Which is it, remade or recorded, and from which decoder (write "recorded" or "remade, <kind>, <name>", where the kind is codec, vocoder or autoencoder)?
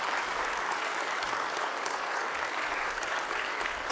remade, codec, DAC